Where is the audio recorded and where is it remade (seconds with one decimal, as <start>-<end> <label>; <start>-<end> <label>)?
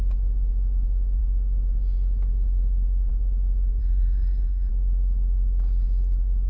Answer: 0.0-3.8 recorded; 3.8-4.7 remade; 4.7-6.5 recorded